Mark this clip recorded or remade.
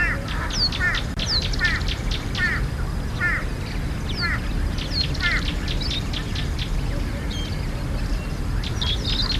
recorded